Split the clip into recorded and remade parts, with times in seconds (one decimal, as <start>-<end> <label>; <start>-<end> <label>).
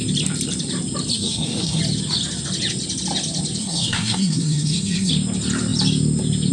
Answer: 0.0-1.1 recorded; 1.1-1.8 remade; 1.8-3.6 recorded; 3.6-5.1 remade; 5.1-6.5 recorded